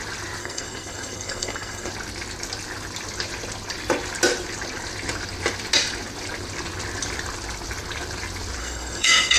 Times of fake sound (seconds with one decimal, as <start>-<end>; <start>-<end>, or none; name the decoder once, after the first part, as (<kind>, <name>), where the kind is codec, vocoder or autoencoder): 0.4-1.9 (codec, SNAC); 8.6-9.4